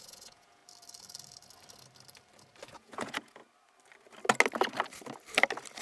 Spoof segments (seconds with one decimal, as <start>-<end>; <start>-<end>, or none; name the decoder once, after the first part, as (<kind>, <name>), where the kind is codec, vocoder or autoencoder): 0.0-0.6 (vocoder, Vocos); 2.7-3.4